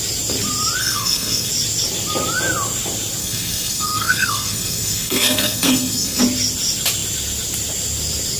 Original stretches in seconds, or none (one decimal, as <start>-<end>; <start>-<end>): 0.0-0.8; 1.5-3.2; 6.2-8.4